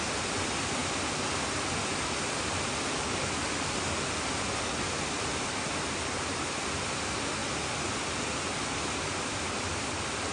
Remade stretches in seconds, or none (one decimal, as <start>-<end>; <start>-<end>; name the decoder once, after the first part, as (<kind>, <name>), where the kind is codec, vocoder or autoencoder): none